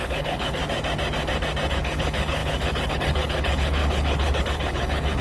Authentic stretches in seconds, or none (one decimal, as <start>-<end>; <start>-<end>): 0.6-1.7